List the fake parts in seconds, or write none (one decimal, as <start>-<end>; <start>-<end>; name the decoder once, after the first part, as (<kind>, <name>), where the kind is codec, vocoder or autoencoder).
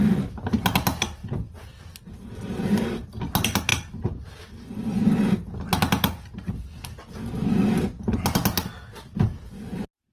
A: none